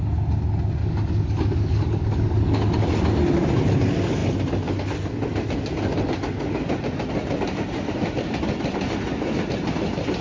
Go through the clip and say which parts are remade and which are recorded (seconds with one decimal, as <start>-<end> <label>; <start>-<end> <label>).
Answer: 0.0-0.8 recorded; 0.8-2.6 remade; 2.6-10.2 recorded